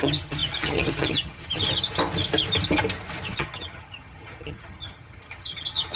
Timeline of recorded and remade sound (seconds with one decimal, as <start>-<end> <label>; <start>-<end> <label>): 0.0-1.6 remade; 1.6-3.3 recorded; 3.3-6.0 remade